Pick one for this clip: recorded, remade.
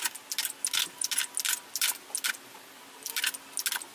recorded